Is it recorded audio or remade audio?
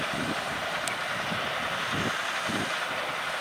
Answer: recorded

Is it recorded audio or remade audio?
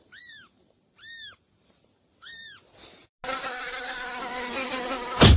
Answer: recorded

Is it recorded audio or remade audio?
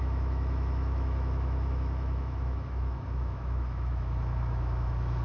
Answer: remade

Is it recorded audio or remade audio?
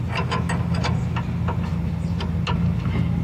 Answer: recorded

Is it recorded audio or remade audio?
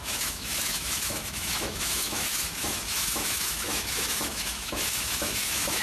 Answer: remade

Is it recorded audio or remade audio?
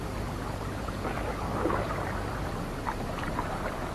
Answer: recorded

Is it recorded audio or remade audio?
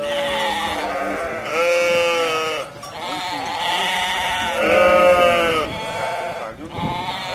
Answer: recorded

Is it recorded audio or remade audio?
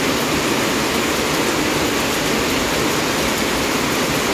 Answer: recorded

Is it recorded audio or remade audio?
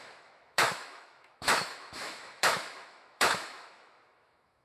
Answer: remade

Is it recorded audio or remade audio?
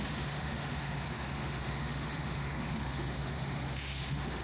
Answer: remade